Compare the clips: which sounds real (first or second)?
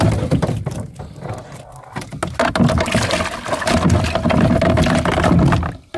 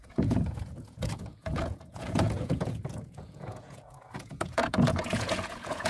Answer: first